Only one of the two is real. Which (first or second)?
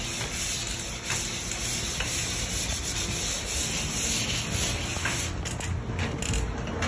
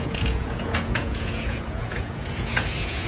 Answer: first